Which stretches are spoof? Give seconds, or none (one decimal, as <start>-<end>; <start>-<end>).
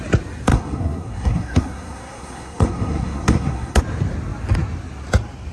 0.5-3.8